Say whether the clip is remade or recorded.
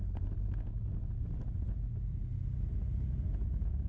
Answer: recorded